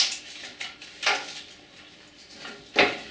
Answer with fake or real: real